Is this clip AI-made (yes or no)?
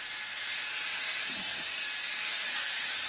no